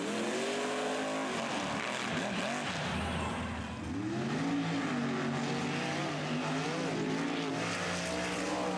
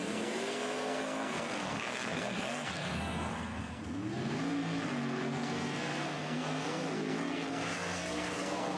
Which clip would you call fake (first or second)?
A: second